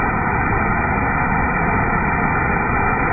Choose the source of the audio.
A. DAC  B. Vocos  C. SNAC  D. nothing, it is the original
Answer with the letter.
D